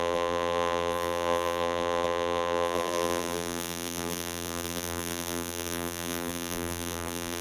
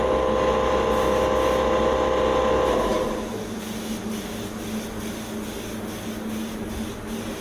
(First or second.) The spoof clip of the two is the first